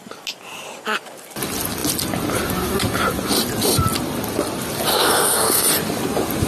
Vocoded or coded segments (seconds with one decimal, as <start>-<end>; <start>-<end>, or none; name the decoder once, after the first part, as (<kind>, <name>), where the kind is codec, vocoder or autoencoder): 4.9-5.6 (codec, SNAC)